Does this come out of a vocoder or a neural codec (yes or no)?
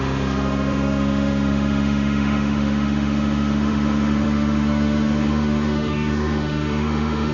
yes